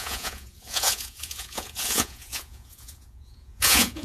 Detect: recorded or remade remade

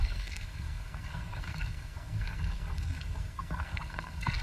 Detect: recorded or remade remade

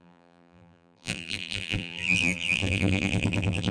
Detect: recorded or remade remade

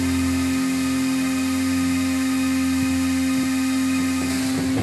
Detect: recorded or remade recorded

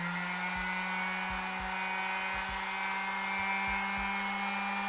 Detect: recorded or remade recorded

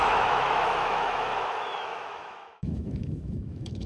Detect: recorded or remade remade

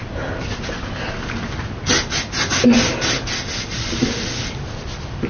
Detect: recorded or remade recorded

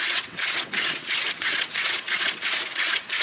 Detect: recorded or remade remade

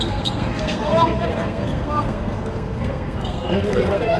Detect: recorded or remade remade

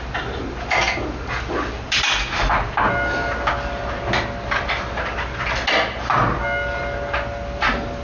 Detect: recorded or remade recorded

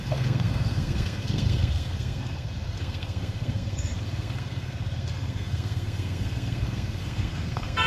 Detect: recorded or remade remade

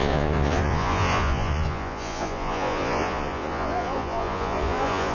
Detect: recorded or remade remade